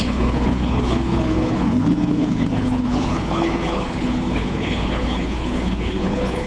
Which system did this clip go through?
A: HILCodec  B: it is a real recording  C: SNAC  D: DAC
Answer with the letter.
A